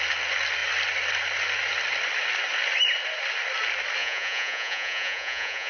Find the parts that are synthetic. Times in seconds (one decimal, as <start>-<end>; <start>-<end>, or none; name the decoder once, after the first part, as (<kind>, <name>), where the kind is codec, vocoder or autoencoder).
4.0-5.7 (vocoder, Vocos)